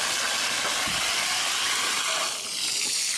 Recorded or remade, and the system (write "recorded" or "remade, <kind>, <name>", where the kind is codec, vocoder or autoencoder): recorded